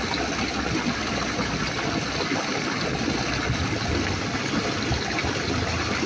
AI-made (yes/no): no